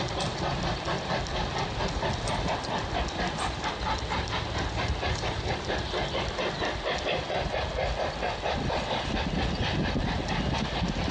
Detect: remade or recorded recorded